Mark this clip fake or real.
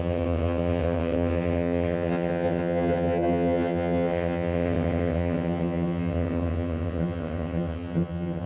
fake